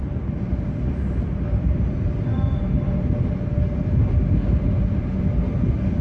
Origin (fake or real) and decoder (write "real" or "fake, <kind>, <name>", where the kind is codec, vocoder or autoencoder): real